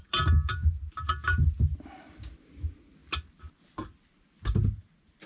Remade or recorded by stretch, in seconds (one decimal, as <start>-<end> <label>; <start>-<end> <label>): 0.0-5.3 recorded